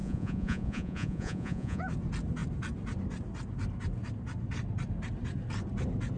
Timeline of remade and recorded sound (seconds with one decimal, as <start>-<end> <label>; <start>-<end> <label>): 0.0-1.8 remade; 1.8-6.2 recorded